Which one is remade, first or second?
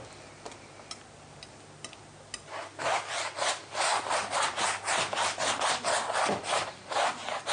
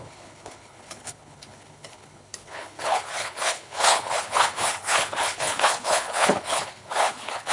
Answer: second